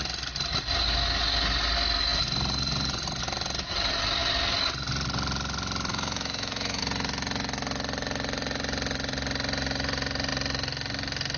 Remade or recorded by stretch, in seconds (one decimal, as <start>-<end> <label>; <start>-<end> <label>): 0.0-5.9 recorded; 5.9-6.8 remade; 6.8-11.4 recorded